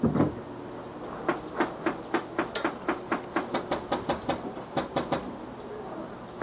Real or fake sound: real